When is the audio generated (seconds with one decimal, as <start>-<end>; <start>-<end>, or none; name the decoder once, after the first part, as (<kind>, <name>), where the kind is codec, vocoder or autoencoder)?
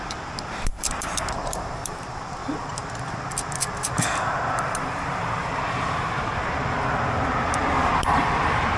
0.0-2.4 (vocoder, BigVGAN v2); 4.0-6.3; 7.6-8.8